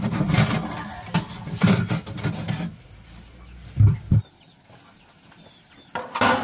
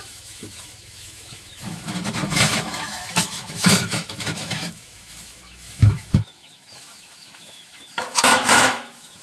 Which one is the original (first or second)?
first